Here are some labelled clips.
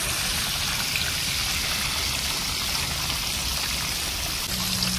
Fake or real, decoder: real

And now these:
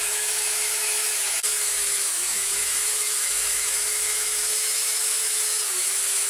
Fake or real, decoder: fake, autoencoder, DAC-VAE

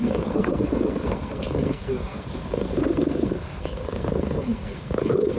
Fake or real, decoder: fake, codec, SNAC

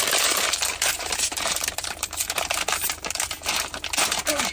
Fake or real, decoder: fake, vocoder, BigVGAN v2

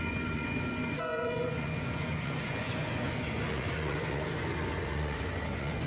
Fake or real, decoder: fake, vocoder, Vocos